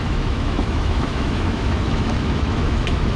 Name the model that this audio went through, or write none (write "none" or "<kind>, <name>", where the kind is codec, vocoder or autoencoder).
autoencoder, DAC-VAE